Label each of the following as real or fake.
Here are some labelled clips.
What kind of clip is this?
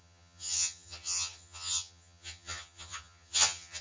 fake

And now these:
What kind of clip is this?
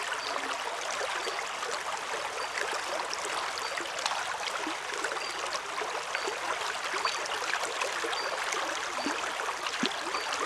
real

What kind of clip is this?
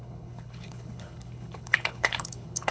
fake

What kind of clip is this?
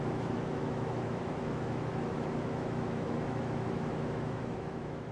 fake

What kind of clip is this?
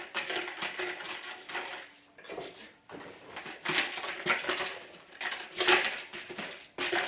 real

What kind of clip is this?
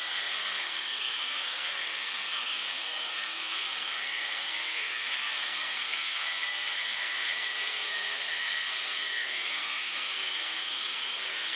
fake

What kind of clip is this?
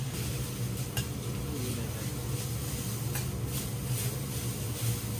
real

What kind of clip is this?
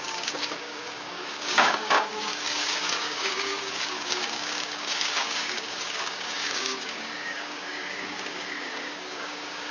fake